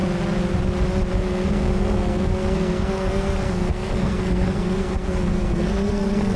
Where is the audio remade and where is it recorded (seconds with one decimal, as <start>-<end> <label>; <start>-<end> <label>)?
0.0-1.1 recorded; 1.1-6.4 remade